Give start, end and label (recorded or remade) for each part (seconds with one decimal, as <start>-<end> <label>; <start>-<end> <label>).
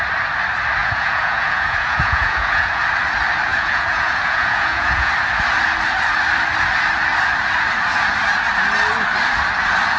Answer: 0.0-0.8 recorded; 0.8-2.8 remade; 2.8-3.5 recorded; 3.5-5.1 remade; 5.1-10.0 recorded